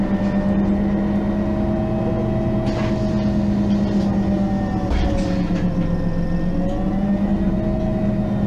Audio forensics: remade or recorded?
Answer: recorded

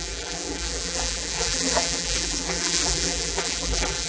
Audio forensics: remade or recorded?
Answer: remade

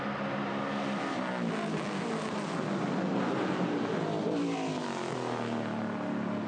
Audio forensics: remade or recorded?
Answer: recorded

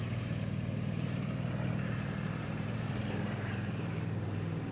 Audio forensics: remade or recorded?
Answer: remade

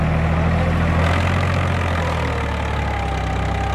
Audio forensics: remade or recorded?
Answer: recorded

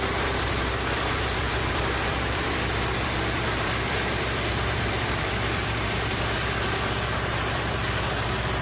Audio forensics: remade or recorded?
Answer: remade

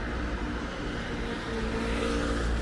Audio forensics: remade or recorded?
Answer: recorded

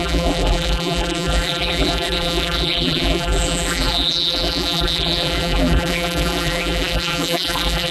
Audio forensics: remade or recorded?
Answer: remade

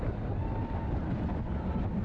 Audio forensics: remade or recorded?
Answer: remade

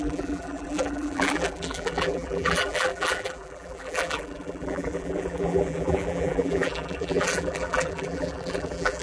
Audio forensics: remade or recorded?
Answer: remade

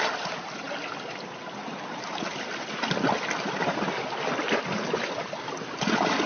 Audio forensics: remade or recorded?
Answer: recorded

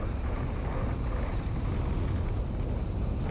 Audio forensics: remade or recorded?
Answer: recorded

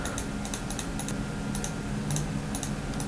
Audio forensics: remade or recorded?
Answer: recorded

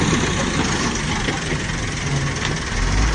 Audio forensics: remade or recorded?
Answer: recorded